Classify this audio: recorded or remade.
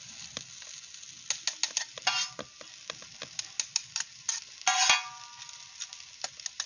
recorded